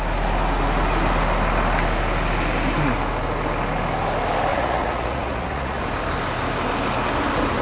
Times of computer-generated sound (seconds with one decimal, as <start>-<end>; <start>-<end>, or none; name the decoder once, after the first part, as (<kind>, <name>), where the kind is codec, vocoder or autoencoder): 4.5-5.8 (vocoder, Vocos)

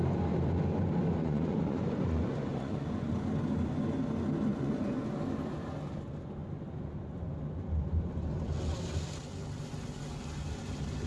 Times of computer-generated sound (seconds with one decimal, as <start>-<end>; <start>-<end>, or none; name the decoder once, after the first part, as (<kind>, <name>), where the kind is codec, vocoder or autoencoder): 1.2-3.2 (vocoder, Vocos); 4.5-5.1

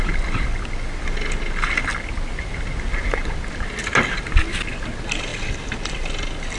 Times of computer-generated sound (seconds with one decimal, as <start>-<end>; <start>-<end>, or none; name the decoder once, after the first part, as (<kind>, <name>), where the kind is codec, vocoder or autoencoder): none